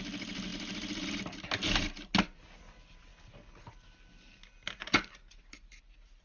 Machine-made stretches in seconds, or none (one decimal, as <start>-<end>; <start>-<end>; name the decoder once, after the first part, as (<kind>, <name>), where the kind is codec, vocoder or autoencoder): none